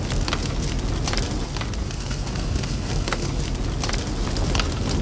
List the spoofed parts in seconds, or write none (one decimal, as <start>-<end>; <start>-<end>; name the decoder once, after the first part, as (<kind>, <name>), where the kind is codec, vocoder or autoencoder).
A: 1.8-3.4 (codec, SNAC)